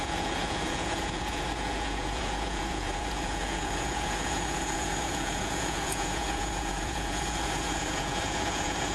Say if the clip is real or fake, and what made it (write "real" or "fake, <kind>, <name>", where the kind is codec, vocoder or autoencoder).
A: fake, vocoder, Vocos